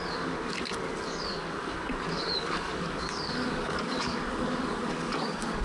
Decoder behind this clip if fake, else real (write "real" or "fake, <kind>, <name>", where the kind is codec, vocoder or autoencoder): fake, codec, DAC